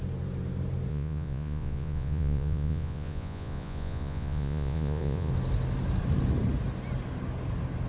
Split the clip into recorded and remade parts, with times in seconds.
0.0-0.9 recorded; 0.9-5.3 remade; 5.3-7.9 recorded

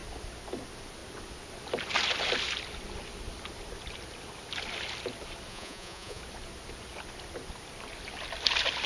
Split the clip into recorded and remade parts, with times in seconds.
0.0-5.5 recorded; 5.5-6.2 remade; 6.2-8.9 recorded

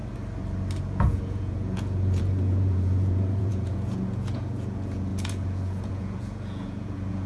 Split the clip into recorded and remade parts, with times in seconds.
0.0-0.8 recorded; 0.8-7.3 remade

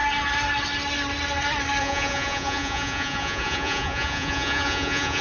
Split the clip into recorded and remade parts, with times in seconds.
0.0-1.8 recorded; 1.8-5.2 remade

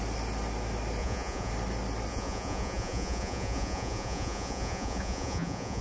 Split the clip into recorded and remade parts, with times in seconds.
0.0-1.0 recorded; 1.0-1.5 remade; 1.5-2.1 recorded; 2.1-5.8 remade

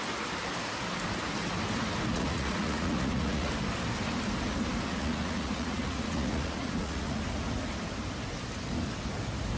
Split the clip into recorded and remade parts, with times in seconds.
0.0-2.1 recorded; 2.1-3.5 remade; 3.5-4.9 recorded; 4.9-7.2 remade; 7.2-9.6 recorded

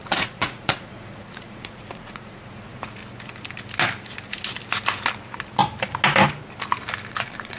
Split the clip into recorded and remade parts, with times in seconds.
0.0-3.0 remade; 3.0-7.1 recorded; 7.1-7.6 remade

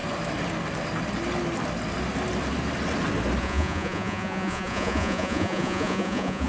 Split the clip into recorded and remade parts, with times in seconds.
0.0-3.4 recorded; 3.4-6.5 remade